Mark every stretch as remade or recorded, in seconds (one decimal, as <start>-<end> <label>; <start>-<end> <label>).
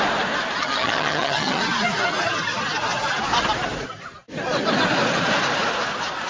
0.0-0.6 recorded; 0.6-1.6 remade; 1.6-6.3 recorded